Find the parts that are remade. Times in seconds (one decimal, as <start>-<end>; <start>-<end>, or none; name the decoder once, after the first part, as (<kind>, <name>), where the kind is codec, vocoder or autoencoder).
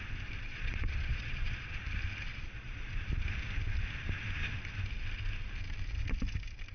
0.5-1.8 (vocoder, Vocos); 2.3-3.0